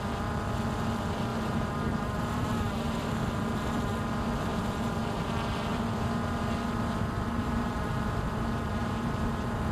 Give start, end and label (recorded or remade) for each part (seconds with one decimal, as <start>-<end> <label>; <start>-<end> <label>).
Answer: 0.0-1.3 recorded; 1.3-3.3 remade; 3.3-4.5 recorded; 4.5-5.3 remade; 5.3-5.7 recorded; 5.7-8.4 remade; 8.4-8.8 recorded; 8.8-9.7 remade